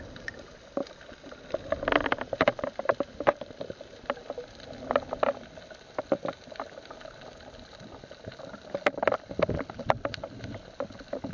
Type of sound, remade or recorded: recorded